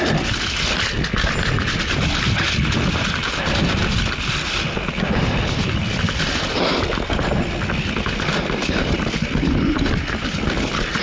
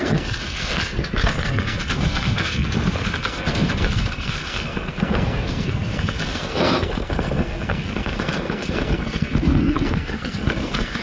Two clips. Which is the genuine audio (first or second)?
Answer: first